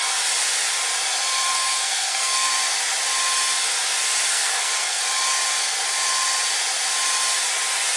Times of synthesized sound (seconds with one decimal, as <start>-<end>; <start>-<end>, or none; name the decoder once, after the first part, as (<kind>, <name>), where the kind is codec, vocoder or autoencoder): 1.5-2.5 (codec, SNAC); 4.3-5.0